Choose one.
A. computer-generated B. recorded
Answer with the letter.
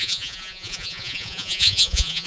A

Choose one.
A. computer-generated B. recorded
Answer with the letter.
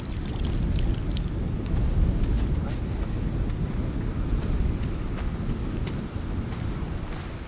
B